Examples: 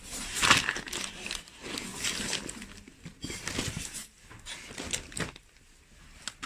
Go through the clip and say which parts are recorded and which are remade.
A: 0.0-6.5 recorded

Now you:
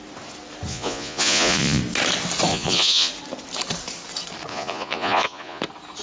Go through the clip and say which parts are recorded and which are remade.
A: 0.0-0.7 recorded; 0.7-1.8 remade; 1.8-2.5 recorded; 2.5-3.1 remade; 3.1-4.5 recorded; 4.5-5.6 remade; 5.6-6.0 recorded

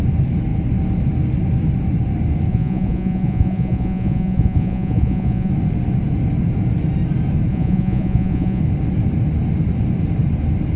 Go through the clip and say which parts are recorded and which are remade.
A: 0.0-2.5 recorded; 2.5-5.5 remade; 5.5-7.5 recorded; 7.5-8.6 remade; 8.6-10.8 recorded

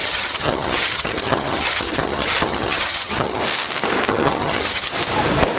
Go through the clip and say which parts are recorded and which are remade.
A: 0.0-3.4 remade; 3.4-4.1 recorded; 4.1-4.9 remade; 4.9-5.6 recorded

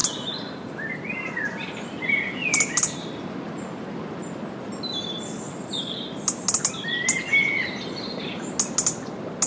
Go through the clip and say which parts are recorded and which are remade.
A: 0.0-3.2 remade; 3.2-9.5 recorded

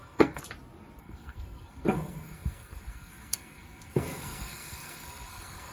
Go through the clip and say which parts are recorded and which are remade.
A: 0.0-0.4 remade; 0.4-1.0 recorded; 1.0-5.7 remade

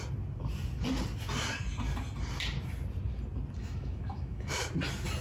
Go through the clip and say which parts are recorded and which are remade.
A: 0.0-3.6 recorded; 3.6-4.6 remade; 4.6-5.2 recorded

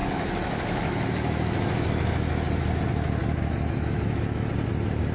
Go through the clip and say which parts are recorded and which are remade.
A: 0.0-2.8 remade; 2.8-3.2 recorded; 3.2-4.5 remade; 4.5-5.1 recorded